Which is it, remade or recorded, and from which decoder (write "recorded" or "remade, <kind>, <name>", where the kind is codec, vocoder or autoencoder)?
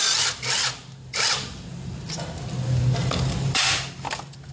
recorded